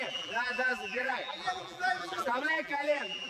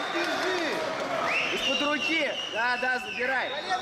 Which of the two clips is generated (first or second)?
first